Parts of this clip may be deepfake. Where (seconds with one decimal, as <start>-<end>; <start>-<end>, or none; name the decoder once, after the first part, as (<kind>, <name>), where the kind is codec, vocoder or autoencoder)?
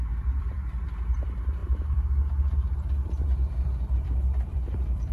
0.0-5.1 (vocoder, BigVGAN v2)